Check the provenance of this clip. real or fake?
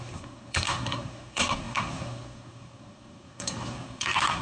fake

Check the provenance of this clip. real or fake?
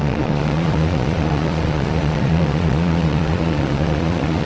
fake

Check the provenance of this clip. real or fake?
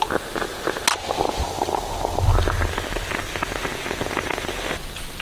real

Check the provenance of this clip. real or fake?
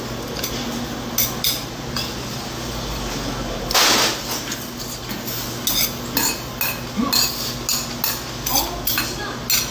real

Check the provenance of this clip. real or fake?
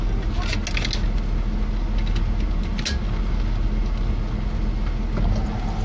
real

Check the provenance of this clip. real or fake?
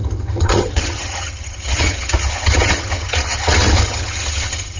fake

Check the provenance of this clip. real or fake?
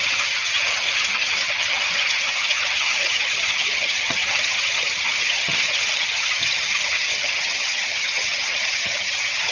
fake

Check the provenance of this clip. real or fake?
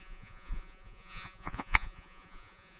fake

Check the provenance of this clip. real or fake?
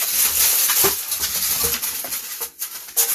real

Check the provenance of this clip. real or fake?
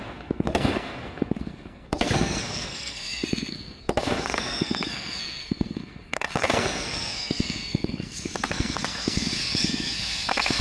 fake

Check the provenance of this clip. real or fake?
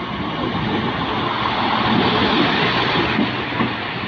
real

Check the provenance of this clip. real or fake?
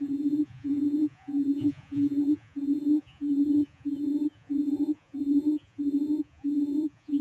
fake